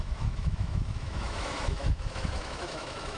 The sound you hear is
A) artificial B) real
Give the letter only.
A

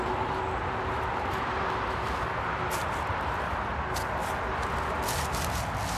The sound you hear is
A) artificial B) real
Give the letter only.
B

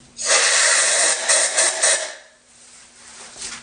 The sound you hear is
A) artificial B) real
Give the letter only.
A